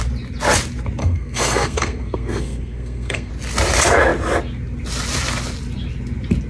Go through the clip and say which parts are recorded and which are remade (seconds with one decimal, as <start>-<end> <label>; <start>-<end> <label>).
0.0-1.0 recorded; 1.0-3.3 remade; 3.3-6.5 recorded